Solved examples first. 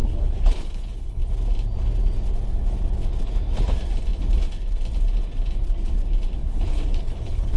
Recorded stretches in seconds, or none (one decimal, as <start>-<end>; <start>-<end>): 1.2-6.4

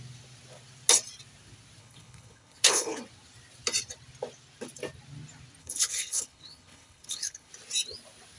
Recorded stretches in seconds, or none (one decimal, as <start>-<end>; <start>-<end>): 0.0-1.8; 3.0-5.6; 7.5-8.4

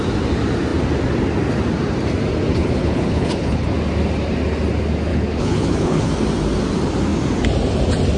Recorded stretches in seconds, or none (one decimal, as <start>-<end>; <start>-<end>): 0.0-2.6; 3.7-5.1; 6.1-8.2

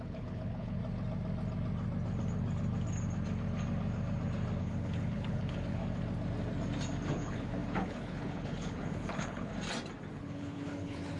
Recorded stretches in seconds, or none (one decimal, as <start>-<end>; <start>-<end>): 0.8-4.6; 5.8-7.1; 9.5-10.1

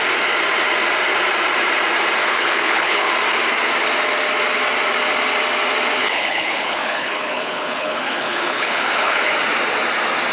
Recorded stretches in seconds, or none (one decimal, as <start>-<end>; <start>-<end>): 0.0-2.2; 3.1-6.0; 9.3-10.3

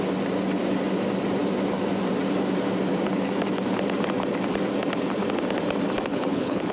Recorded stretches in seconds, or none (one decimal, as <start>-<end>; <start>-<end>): 0.0-6.1

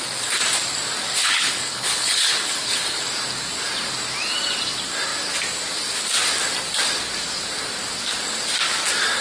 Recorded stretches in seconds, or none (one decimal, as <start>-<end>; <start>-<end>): 0.0-1.2; 3.0-9.2

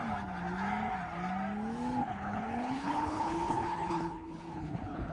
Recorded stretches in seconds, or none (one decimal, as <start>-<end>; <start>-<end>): 0.0-2.0